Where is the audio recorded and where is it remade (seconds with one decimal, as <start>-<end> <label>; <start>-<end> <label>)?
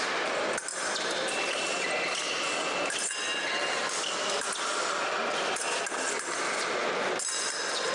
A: 0.0-0.7 recorded; 0.7-1.3 remade; 1.3-7.9 recorded